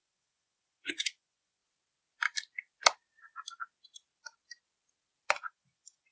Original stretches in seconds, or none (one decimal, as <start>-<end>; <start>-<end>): 1.6-5.3